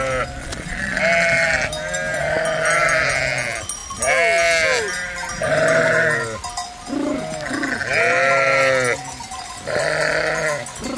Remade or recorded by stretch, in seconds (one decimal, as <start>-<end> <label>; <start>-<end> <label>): 0.0-0.4 recorded; 0.4-1.0 remade; 1.0-11.0 recorded